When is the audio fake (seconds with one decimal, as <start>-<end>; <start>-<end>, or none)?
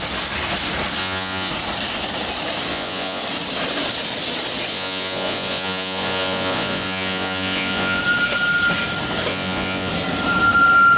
1.0-1.5; 2.7-3.2; 4.7-8.0; 9.3-9.9